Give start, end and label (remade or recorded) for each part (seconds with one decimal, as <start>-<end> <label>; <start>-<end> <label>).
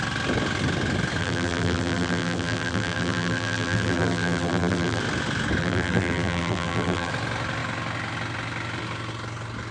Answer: 0.0-1.2 recorded; 1.2-5.0 remade; 5.0-5.6 recorded; 5.6-7.1 remade; 7.1-9.7 recorded